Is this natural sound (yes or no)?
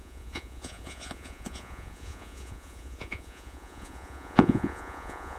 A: no